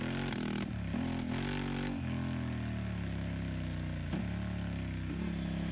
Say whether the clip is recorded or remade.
recorded